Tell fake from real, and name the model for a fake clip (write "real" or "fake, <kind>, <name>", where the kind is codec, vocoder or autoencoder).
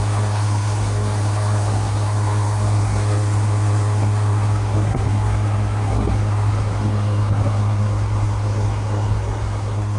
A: fake, codec, SNAC